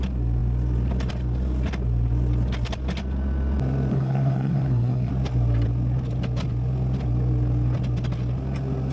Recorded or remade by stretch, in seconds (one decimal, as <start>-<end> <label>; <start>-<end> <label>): 0.0-3.9 recorded; 3.9-5.1 remade; 5.1-8.9 recorded